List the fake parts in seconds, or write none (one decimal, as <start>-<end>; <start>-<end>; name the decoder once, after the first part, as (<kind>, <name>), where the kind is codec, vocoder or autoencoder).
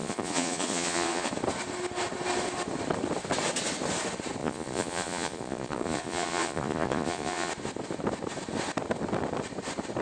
0.0-1.3 (vocoder, Vocos); 4.4-7.5